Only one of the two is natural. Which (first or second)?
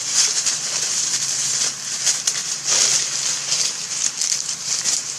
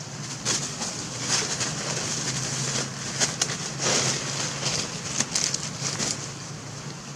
second